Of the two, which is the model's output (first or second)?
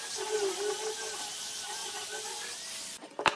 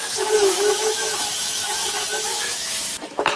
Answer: second